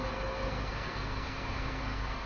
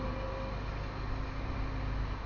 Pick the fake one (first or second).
first